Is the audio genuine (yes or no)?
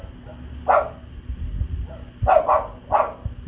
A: yes